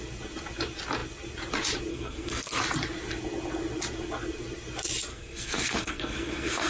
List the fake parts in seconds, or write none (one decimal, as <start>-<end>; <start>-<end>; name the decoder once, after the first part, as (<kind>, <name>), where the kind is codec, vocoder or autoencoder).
1.9-2.6 (codec, SNAC); 5.1-6.7